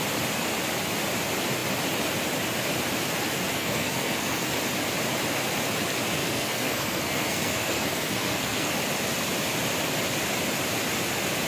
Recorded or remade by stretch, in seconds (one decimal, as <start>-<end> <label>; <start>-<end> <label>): 0.0-3.5 recorded; 3.5-4.5 remade; 4.5-6.2 recorded; 6.2-8.7 remade; 8.7-11.5 recorded

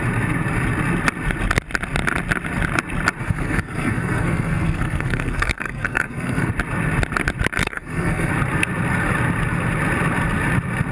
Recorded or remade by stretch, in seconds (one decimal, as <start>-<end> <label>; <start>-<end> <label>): 0.0-3.2 recorded; 3.2-6.5 remade; 6.5-7.6 recorded; 7.6-8.3 remade; 8.3-10.9 recorded

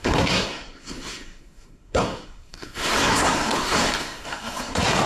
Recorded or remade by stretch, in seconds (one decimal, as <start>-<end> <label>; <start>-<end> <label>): 0.0-5.1 remade

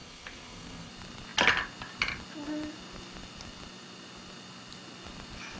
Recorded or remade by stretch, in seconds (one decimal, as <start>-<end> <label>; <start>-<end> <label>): 0.0-0.9 remade; 0.9-5.6 recorded

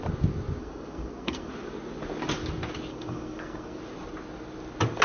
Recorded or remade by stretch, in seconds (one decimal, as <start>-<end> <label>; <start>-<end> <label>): 0.0-0.6 recorded; 0.6-1.5 remade; 1.5-2.9 recorded; 2.9-3.8 remade; 3.8-5.0 recorded

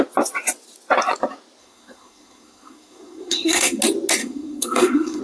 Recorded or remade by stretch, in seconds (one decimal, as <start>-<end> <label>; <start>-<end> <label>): 0.0-1.6 recorded; 1.6-3.8 remade; 3.8-4.2 recorded; 4.2-5.2 remade

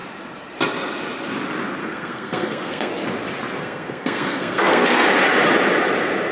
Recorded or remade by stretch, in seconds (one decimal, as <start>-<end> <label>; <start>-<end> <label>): 0.0-1.8 recorded; 1.8-2.9 remade; 2.9-3.6 recorded; 3.6-5.2 remade; 5.2-6.3 recorded

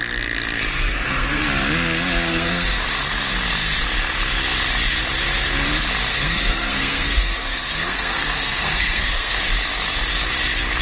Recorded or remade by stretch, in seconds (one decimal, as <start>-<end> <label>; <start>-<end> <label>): 0.0-0.9 recorded; 0.9-1.4 remade; 1.4-2.3 recorded; 2.3-2.8 remade; 2.8-6.1 recorded; 6.1-9.4 remade; 9.4-10.8 recorded